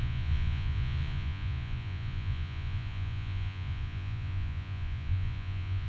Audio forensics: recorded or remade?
remade